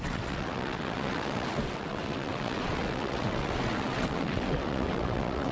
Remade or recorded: remade